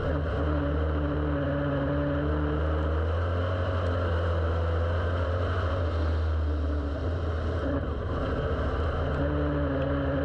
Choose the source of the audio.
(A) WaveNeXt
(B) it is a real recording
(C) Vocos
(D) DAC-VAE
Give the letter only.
B